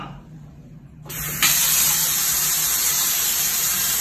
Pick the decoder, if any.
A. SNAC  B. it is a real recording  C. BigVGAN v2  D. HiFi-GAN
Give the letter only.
C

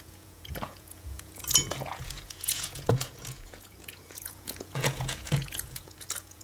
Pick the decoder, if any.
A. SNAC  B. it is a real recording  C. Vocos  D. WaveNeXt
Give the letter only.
C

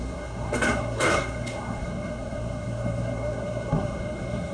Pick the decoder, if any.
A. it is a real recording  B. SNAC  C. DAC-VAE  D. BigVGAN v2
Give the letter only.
B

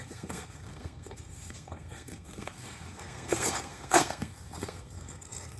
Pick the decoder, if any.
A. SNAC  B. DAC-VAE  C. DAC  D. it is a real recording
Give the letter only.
A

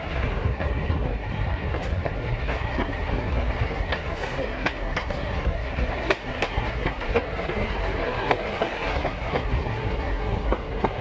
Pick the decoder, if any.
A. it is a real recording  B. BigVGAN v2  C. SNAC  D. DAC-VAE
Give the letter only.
C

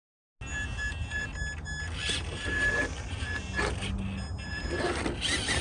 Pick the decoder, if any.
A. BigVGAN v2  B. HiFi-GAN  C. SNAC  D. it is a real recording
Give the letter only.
D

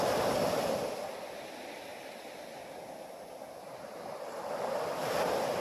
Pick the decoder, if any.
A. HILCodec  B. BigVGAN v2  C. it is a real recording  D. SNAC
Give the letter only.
B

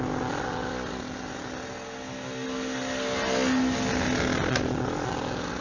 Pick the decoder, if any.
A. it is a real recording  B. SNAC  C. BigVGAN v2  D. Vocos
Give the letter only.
A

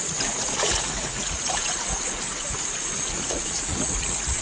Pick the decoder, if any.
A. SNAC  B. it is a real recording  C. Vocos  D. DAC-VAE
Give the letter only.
C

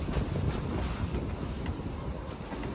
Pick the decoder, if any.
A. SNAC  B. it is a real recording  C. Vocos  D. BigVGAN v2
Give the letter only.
B